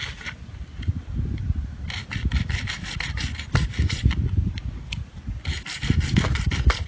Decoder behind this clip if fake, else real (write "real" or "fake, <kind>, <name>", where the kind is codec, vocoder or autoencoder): real